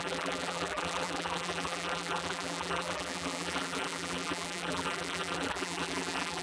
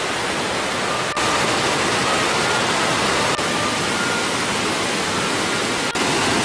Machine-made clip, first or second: first